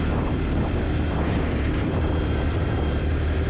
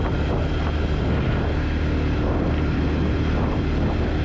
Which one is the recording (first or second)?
second